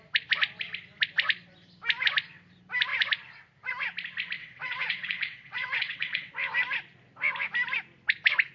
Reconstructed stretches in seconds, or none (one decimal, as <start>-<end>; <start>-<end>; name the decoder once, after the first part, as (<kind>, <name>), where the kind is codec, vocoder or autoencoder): 4.4-6.3 (vocoder, WaveNeXt)